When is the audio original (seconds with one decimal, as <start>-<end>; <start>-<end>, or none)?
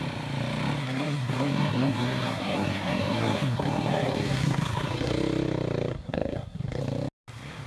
0.0-0.8; 5.1-5.9; 6.8-7.7